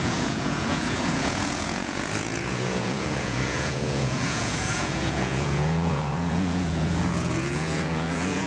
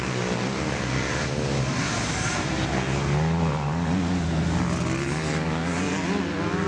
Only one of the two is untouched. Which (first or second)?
second